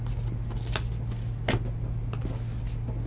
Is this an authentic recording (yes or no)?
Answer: yes